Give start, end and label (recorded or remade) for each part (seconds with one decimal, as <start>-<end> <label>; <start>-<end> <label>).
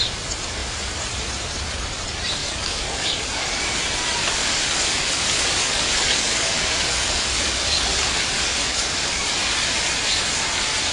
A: 0.0-2.4 recorded; 2.4-3.8 remade; 3.8-4.4 recorded; 4.4-9.3 remade; 9.3-10.9 recorded